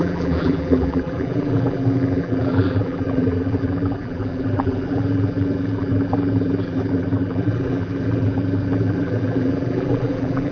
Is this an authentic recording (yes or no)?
no